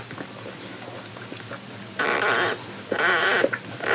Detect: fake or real real